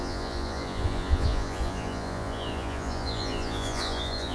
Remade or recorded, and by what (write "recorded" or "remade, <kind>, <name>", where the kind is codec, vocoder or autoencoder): remade, vocoder, Vocos